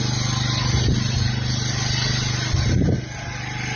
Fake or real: real